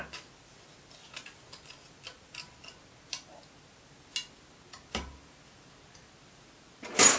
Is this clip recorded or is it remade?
recorded